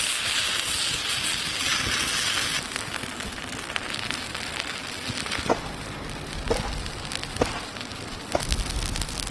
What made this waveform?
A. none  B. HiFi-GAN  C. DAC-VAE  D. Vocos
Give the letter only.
A